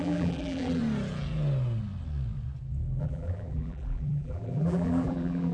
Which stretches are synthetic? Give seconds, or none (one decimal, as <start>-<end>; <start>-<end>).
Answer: 0.0-0.8; 3.0-5.5

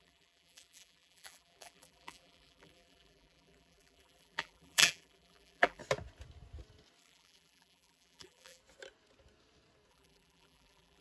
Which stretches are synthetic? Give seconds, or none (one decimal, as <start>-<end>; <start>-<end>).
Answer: 0.0-5.8; 7.0-8.6; 9.9-11.0

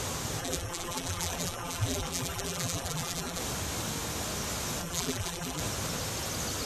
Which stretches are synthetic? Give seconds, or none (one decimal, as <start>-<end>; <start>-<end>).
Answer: 0.4-3.4; 4.8-5.6

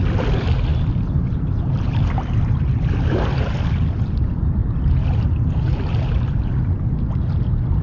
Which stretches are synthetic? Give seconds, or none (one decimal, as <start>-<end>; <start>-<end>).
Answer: none

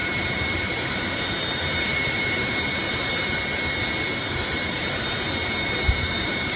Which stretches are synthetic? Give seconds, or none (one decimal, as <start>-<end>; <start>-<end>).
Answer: 0.0-3.4; 4.2-6.6

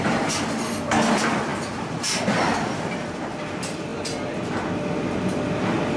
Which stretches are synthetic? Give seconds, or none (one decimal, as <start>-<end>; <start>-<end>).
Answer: 0.0-6.0

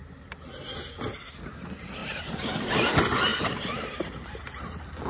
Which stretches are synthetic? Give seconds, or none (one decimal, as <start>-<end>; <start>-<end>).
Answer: 2.0-2.7; 3.3-5.1

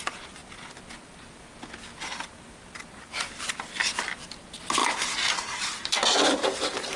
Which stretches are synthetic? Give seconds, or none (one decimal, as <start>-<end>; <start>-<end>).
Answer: none